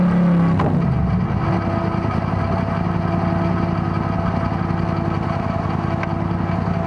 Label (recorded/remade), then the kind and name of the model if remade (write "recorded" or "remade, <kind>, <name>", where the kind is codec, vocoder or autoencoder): recorded